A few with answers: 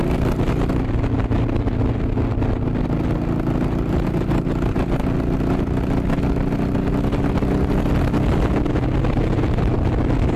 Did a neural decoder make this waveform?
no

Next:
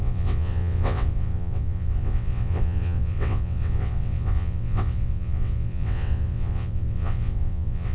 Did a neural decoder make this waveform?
yes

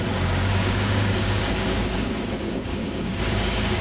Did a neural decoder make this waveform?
yes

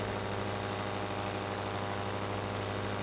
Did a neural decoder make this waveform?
no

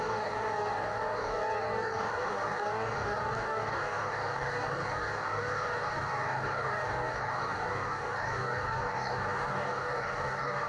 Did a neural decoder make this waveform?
yes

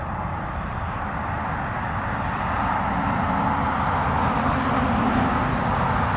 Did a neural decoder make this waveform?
no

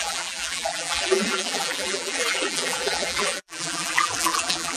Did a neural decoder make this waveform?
yes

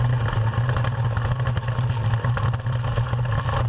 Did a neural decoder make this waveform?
no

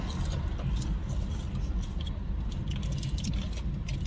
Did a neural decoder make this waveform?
no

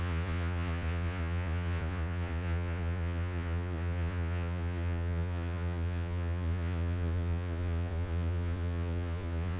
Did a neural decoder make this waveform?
yes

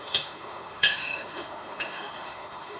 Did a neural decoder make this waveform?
yes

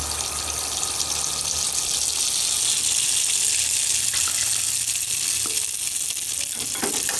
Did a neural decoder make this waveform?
no